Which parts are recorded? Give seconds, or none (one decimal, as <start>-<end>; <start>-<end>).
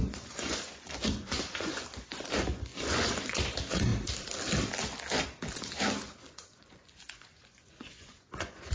3.9-6.1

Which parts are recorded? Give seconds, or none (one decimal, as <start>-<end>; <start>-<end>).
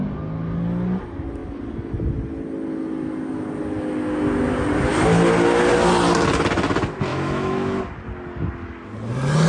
0.0-7.1; 7.8-9.5